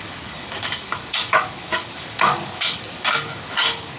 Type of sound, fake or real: fake